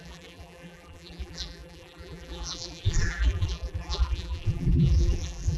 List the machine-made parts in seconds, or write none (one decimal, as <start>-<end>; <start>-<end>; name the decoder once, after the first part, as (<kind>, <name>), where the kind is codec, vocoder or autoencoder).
0.0-5.6 (vocoder, BigVGAN v2)